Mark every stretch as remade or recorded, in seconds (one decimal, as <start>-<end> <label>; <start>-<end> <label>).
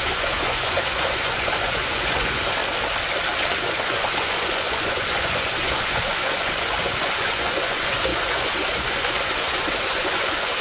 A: 0.0-2.6 remade; 2.6-3.6 recorded; 3.6-10.6 remade